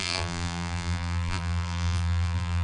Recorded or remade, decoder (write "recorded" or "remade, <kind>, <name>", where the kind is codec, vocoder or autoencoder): remade, vocoder, BigVGAN v2